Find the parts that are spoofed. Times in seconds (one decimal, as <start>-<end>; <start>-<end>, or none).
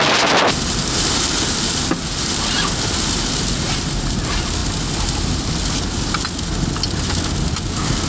none